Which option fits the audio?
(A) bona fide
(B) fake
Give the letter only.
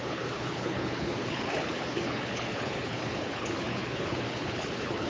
B